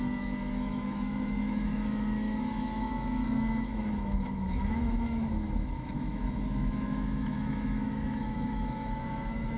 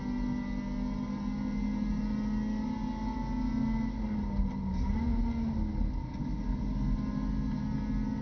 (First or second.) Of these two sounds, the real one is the second